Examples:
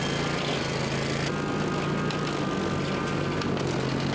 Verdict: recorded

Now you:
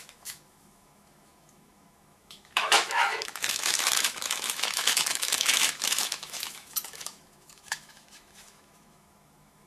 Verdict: remade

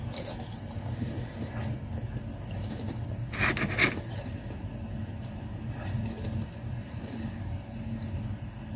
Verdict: recorded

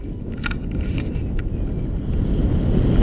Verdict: recorded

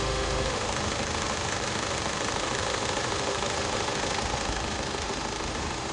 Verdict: remade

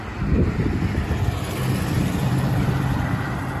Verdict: remade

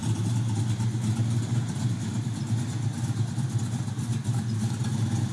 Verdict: recorded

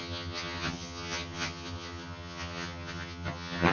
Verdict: remade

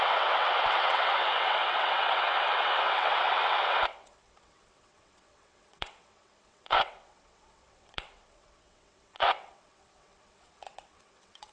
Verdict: remade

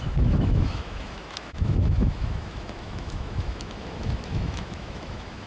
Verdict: remade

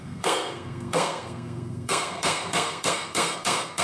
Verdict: remade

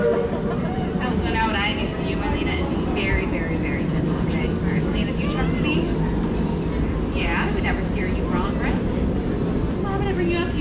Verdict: recorded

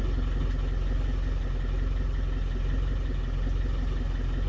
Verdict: recorded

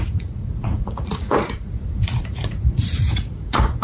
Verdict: remade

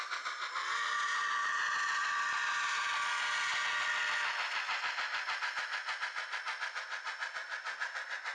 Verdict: recorded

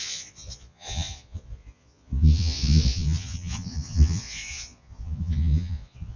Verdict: remade